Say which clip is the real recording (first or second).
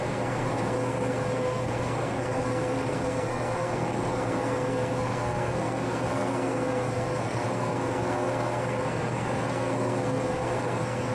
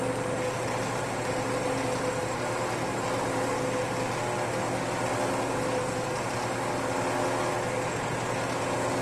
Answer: second